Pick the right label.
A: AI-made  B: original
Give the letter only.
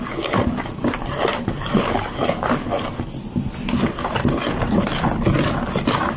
B